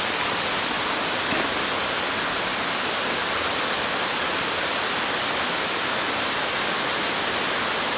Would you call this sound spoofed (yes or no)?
no